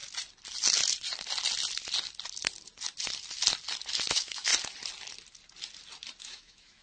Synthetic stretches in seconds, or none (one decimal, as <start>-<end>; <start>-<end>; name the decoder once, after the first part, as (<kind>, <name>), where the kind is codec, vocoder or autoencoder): 4.1-4.5 (autoencoder, DAC-VAE); 6.2-6.8